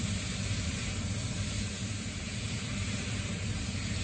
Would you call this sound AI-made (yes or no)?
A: yes